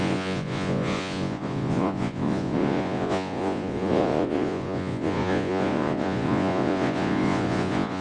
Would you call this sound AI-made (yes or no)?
yes